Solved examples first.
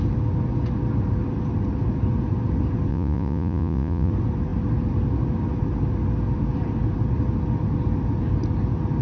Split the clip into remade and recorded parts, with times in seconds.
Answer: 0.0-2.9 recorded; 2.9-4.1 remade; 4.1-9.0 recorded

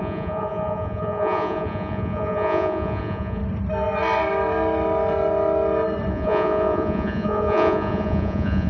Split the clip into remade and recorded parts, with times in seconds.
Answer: 0.0-3.4 remade; 3.4-6.1 recorded; 6.1-8.7 remade

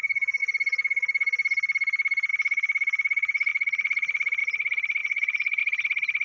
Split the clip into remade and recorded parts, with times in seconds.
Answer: 0.0-5.0 recorded; 5.0-5.6 remade; 5.6-6.2 recorded

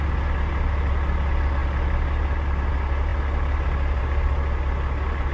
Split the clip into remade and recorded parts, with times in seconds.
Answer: 0.0-5.3 recorded

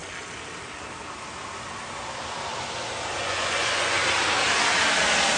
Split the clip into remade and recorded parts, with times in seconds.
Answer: 0.0-3.2 recorded; 3.2-4.0 remade; 4.0-5.4 recorded